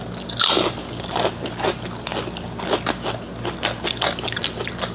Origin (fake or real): real